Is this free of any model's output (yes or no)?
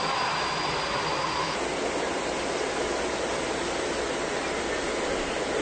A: yes